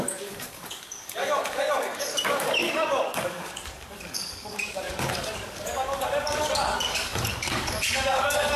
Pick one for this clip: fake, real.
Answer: fake